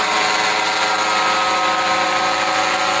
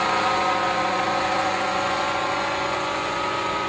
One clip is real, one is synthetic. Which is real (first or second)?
first